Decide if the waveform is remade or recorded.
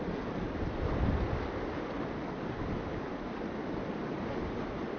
recorded